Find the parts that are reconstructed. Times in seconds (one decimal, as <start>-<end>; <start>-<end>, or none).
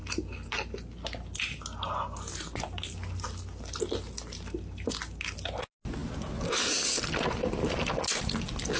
none